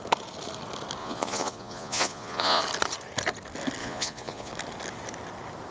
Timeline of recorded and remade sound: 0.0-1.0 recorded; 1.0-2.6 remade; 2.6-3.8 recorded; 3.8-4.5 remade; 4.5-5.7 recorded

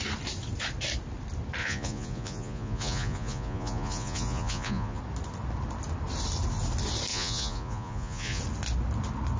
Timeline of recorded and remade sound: 0.0-1.6 recorded; 1.6-5.0 remade; 5.0-7.1 recorded; 7.1-8.4 remade; 8.4-9.4 recorded